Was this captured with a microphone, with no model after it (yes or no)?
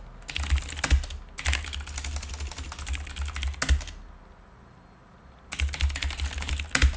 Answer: yes